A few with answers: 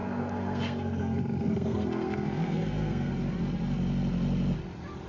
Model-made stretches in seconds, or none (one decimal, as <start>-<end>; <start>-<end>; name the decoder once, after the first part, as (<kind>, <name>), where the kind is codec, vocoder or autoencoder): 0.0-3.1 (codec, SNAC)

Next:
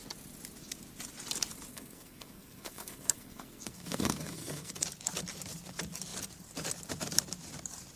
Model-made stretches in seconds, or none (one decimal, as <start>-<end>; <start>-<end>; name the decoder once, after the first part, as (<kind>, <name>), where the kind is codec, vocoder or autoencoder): 1.7-4.7 (codec, SNAC)

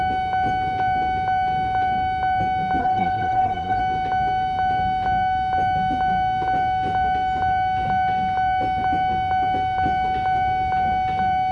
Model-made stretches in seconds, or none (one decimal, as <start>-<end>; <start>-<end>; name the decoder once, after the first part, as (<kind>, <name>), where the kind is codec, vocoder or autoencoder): 2.8-3.8 (codec, SNAC)